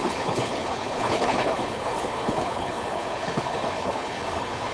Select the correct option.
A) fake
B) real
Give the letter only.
A